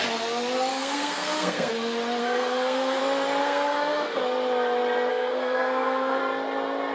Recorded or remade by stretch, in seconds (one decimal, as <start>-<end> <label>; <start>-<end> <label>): 0.0-0.7 recorded; 0.7-1.7 remade; 1.7-2.2 recorded; 2.2-3.0 remade; 3.0-3.4 recorded; 3.4-4.2 remade; 4.2-5.1 recorded; 5.1-6.2 remade; 6.2-6.9 recorded